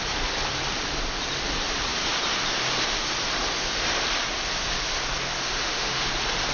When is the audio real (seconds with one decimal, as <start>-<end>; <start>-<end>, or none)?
0.0-5.4; 6.1-6.5

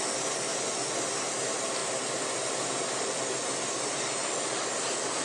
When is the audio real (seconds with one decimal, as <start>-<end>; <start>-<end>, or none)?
0.0-5.2

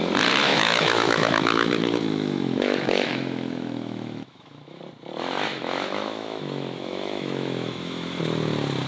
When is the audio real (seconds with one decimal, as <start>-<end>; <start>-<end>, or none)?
0.0-0.5; 4.8-5.5; 8.2-8.9

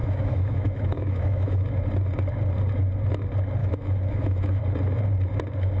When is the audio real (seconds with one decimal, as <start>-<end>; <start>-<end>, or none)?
1.8-3.6; 4.6-5.8

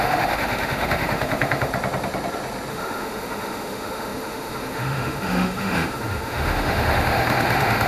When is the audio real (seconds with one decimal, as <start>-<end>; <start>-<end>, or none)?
1.7-2.7

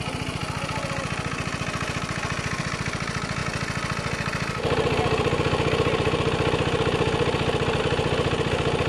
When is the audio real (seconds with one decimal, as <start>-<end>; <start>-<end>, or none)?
0.0-8.9